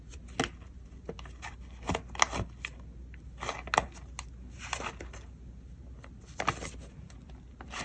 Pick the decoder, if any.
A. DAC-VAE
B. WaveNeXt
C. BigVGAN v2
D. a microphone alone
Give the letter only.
D